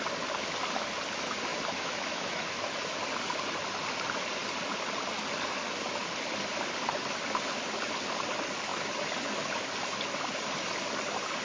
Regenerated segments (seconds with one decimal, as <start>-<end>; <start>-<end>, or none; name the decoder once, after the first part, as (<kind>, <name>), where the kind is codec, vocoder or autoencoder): 1.5-2.8 (autoencoder, DAC-VAE)